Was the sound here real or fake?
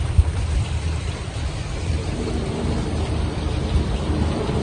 fake